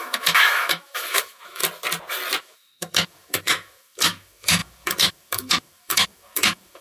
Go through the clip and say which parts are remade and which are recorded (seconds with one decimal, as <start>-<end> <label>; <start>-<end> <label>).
0.0-1.6 remade; 1.6-2.4 recorded; 2.4-6.8 remade

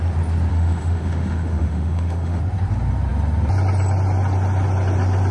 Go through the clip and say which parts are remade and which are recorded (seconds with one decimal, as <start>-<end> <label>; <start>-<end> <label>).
0.0-0.5 recorded; 0.5-2.4 remade; 2.4-5.3 recorded

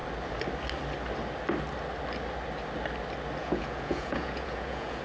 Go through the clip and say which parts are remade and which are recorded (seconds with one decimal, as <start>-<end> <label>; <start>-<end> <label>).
0.0-3.4 recorded; 3.4-5.0 remade